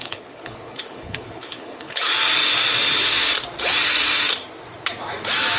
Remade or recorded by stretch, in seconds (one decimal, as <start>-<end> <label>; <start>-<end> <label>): 0.0-2.1 remade; 2.1-5.6 recorded